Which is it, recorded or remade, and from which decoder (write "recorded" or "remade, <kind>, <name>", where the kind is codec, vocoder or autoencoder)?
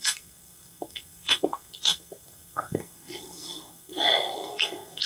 remade, codec, SNAC